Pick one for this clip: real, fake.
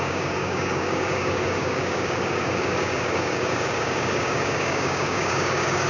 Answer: fake